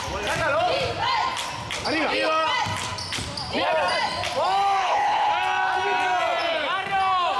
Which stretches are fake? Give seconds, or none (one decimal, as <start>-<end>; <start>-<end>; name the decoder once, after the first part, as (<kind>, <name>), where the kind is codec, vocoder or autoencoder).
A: 4.8-5.3 (codec, HILCodec)